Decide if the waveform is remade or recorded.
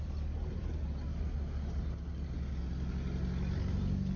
recorded